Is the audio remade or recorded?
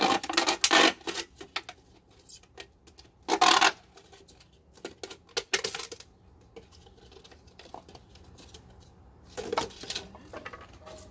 recorded